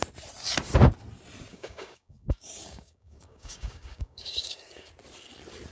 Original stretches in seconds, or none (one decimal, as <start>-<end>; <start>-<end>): 0.0-1.5; 4.9-5.7